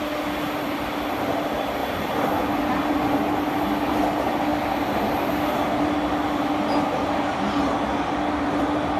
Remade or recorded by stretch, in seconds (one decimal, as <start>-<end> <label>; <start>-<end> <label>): 0.0-9.0 recorded